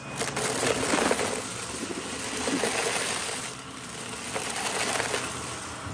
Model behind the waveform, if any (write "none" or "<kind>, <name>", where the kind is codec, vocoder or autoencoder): none